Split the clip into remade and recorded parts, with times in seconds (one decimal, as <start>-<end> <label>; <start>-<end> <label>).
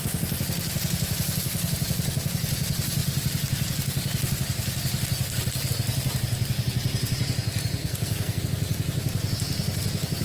0.0-7.8 recorded; 7.8-8.4 remade; 8.4-10.2 recorded